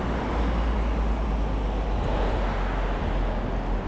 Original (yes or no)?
yes